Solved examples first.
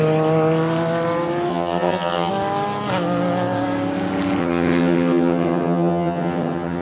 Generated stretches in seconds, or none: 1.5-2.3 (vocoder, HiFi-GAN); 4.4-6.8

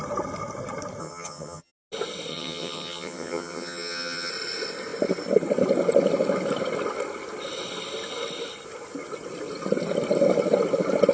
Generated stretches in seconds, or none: 1.0-1.7 (vocoder, HiFi-GAN); 2.3-4.3

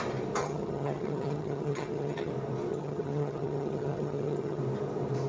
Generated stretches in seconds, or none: 0.4-2.3 (vocoder, HiFi-GAN); 2.7-4.6

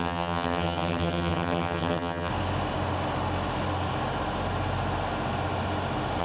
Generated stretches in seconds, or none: 0.0-2.3 (vocoder, HiFi-GAN)